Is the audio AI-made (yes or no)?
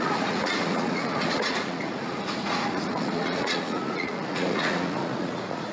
yes